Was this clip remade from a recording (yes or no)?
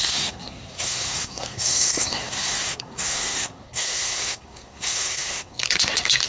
yes